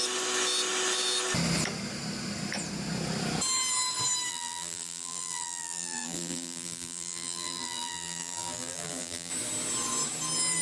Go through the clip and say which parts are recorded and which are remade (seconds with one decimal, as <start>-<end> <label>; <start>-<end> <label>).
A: 0.0-4.3 recorded; 4.3-9.3 remade; 9.3-10.6 recorded